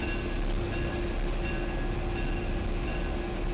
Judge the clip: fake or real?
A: real